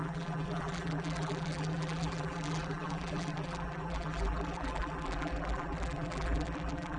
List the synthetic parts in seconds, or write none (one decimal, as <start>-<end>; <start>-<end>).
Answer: 0.0-7.0